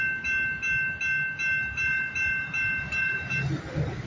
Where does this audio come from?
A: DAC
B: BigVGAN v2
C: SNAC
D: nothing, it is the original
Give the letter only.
D